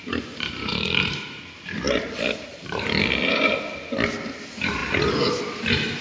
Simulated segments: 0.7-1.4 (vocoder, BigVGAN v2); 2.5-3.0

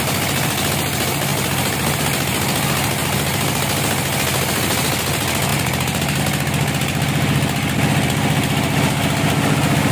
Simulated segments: 5.5-6.2 (vocoder, BigVGAN v2)

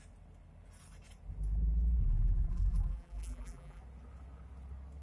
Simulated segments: 2.0-3.8 (vocoder, BigVGAN v2)